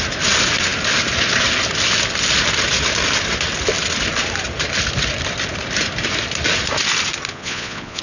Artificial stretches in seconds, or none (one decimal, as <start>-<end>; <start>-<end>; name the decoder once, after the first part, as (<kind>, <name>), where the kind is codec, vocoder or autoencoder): 7.3-8.0 (vocoder, Vocos)